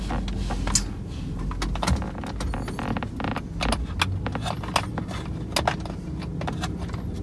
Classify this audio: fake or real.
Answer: real